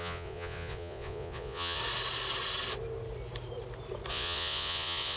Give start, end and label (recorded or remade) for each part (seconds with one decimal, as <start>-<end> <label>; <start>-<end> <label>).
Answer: 0.0-1.8 remade; 1.8-4.1 recorded; 4.1-5.2 remade